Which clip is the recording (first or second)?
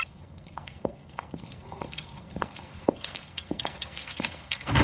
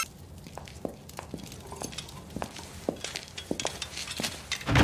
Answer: second